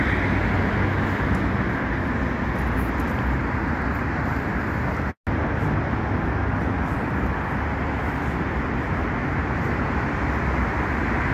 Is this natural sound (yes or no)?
yes